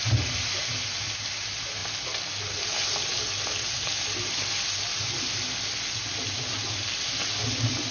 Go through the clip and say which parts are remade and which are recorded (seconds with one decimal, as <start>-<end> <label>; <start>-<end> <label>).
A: 0.0-7.9 recorded